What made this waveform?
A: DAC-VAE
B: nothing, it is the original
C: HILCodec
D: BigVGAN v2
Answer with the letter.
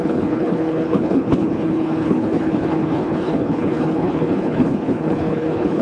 C